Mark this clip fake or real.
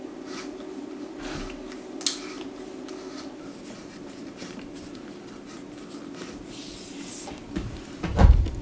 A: real